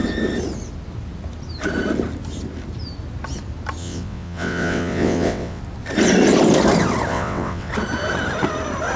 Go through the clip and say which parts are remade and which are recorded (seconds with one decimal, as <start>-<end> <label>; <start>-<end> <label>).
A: 0.0-3.8 recorded; 3.8-5.6 remade; 5.6-7.1 recorded; 7.1-7.7 remade; 7.7-9.0 recorded